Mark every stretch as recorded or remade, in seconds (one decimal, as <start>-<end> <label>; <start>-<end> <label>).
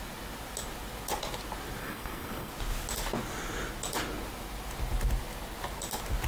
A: 0.0-1.8 recorded; 1.8-2.5 remade; 2.5-6.3 recorded